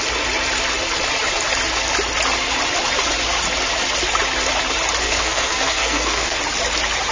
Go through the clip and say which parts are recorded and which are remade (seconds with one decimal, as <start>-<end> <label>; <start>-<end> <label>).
0.0-5.0 recorded; 5.0-6.4 remade; 6.4-7.1 recorded